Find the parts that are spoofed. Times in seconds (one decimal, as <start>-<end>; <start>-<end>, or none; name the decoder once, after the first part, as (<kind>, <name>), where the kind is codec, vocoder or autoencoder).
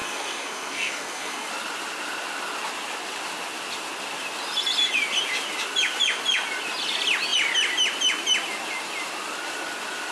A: 0.0-1.5 (codec, SNAC)